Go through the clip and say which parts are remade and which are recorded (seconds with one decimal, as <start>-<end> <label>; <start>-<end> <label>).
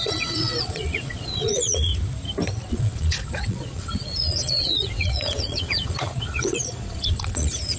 0.0-1.9 remade; 1.9-2.7 recorded; 2.7-7.8 remade